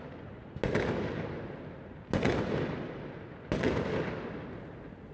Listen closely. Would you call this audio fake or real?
real